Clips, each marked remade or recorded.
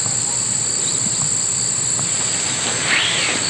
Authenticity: recorded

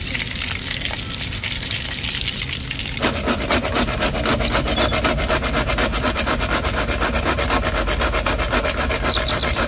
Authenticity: recorded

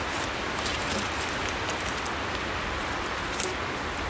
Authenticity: recorded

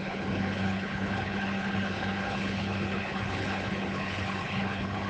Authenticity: remade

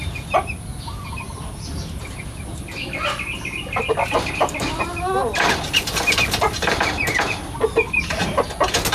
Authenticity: recorded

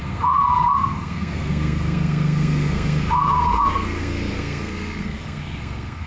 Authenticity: remade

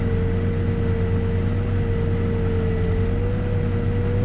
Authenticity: recorded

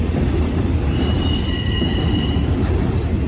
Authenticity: remade